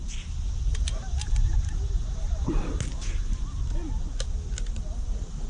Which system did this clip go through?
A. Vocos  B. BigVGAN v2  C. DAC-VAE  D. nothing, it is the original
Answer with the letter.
D